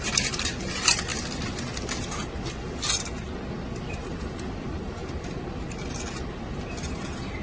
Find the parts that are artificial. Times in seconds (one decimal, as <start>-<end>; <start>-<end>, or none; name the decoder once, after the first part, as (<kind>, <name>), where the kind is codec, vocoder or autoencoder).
0.0-1.1 (vocoder, BigVGAN v2); 3.9-5.0; 6.5-7.4